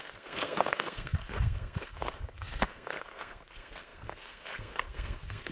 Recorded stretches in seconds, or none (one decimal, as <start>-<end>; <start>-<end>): none